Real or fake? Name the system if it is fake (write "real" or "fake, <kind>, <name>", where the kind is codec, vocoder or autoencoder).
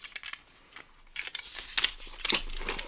real